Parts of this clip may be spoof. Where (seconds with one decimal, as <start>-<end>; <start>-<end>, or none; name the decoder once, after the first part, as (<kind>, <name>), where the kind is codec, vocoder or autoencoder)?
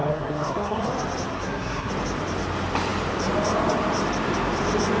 0.0-0.9 (codec, SNAC); 1.3-1.9